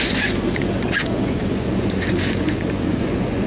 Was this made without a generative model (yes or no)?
no